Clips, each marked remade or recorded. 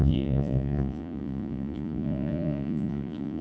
remade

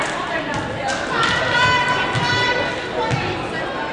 recorded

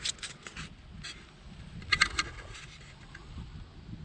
recorded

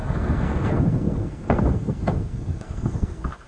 remade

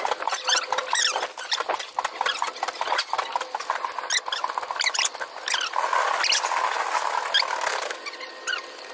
recorded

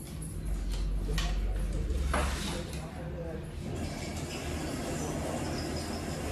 recorded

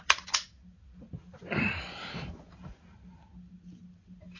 recorded